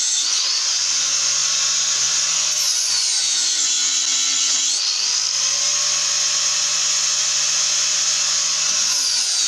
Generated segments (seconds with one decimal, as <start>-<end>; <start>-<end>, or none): 0.0-3.8; 6.1-9.5